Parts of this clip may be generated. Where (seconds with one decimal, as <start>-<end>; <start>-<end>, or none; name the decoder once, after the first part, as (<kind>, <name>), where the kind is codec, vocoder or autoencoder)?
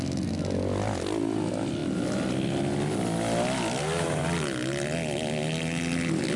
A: none